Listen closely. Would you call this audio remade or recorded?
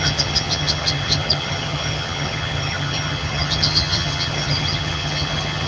remade